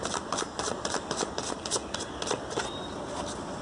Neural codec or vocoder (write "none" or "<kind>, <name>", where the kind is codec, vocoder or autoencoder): none